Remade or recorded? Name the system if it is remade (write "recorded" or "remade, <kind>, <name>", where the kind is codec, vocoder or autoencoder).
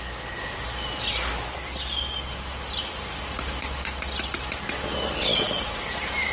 recorded